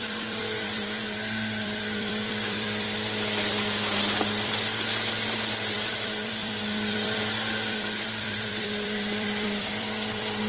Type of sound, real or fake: fake